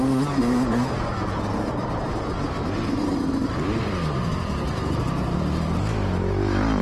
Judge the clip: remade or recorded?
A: recorded